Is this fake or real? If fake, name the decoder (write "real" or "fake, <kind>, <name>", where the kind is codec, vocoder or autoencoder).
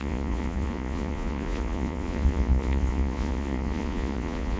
fake, vocoder, Vocos